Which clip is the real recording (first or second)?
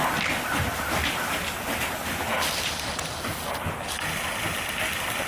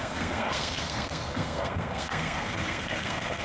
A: first